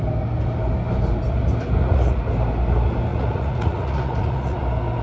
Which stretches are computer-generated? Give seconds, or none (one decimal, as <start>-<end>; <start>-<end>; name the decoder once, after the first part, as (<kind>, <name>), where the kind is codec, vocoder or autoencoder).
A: 1.8-2.3 (vocoder, Vocos); 3.1-4.6